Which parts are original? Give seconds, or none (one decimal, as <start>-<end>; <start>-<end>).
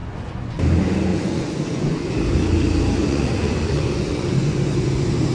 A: 0.6-1.1; 2.2-3.0